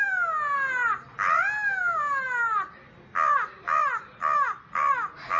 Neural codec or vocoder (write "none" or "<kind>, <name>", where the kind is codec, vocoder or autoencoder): none